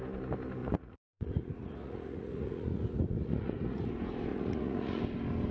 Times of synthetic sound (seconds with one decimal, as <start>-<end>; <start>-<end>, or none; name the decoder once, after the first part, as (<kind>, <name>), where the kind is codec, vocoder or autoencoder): 0.6-3.9 (vocoder, Vocos); 4.3-5.0